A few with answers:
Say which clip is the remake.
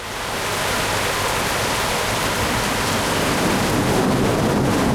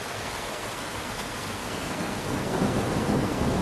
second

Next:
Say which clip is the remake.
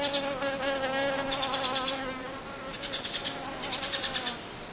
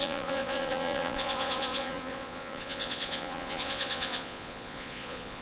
second